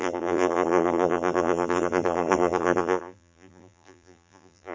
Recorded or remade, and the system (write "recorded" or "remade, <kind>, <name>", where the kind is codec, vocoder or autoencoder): remade, vocoder, BigVGAN v2